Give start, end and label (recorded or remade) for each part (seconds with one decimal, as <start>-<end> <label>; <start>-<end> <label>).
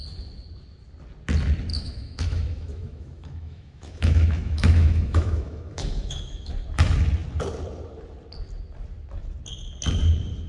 0.0-1.7 recorded; 1.7-6.5 remade; 6.5-10.5 recorded